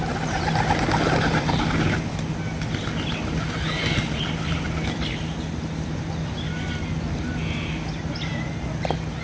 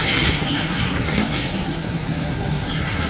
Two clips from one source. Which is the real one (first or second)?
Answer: first